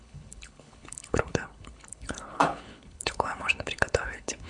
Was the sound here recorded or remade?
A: remade